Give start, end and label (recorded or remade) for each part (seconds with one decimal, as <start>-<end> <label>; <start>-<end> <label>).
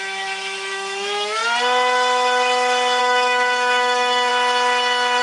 0.0-1.4 remade; 1.4-3.0 recorded; 3.0-4.3 remade; 4.3-5.2 recorded